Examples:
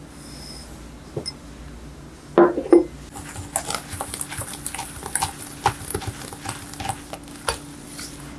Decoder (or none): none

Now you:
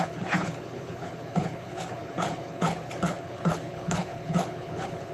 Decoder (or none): codec, HILCodec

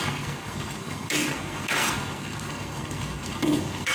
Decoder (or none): codec, SNAC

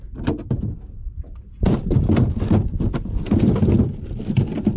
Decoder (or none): none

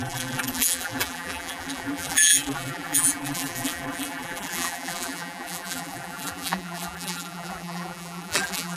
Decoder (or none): vocoder, BigVGAN v2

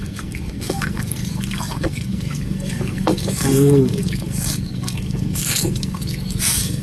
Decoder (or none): codec, SNAC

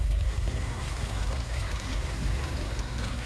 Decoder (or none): codec, SNAC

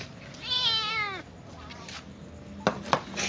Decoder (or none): none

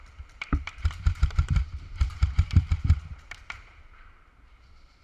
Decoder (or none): vocoder, BigVGAN v2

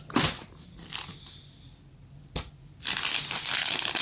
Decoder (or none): none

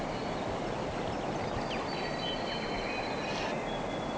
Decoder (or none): none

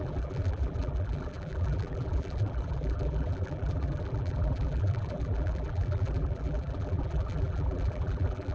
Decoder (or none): vocoder, BigVGAN v2